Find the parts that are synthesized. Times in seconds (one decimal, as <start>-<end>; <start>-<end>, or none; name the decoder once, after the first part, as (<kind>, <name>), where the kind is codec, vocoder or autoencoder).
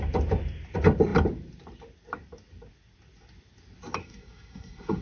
4.0-5.0 (codec, SNAC)